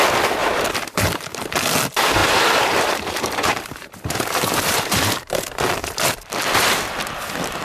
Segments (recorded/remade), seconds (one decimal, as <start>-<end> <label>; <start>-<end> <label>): 0.0-0.4 recorded; 0.4-1.5 remade; 1.5-2.2 recorded; 2.2-5.6 remade; 5.6-7.6 recorded